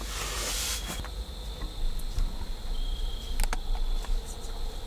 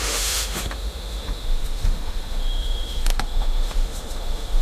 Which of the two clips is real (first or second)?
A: first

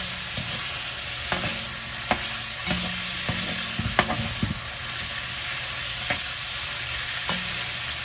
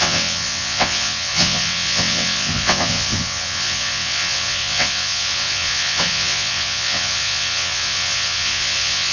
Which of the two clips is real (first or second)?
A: first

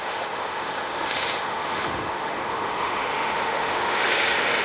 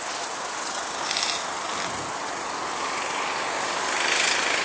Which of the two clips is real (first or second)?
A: second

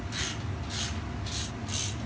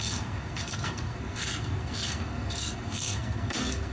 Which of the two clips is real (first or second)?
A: first